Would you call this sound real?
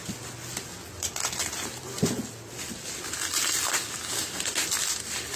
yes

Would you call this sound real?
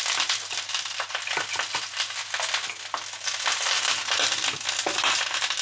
yes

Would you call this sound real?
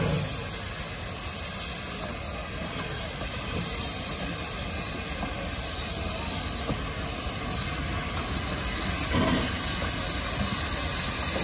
yes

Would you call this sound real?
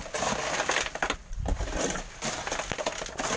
yes